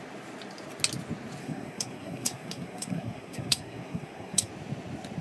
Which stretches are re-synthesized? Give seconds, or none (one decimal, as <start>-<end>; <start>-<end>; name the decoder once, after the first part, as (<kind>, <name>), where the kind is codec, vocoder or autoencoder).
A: 1.4-4.5 (codec, SNAC)